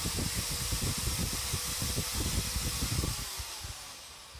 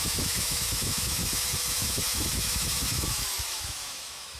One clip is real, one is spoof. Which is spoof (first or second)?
second